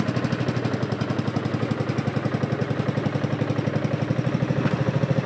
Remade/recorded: recorded